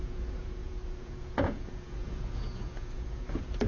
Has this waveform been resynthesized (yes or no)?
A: yes